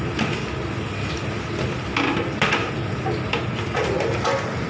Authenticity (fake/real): real